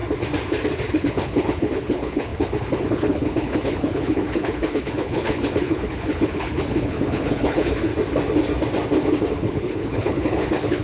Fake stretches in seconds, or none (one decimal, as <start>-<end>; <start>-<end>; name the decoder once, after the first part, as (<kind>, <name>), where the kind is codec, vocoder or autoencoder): 0.9-7.9 (codec, HILCodec); 9.3-10.8